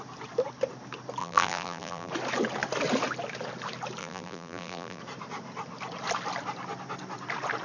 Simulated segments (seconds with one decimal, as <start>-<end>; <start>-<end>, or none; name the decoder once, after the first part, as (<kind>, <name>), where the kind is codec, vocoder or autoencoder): 1.2-2.1 (vocoder, BigVGAN v2); 4.0-5.0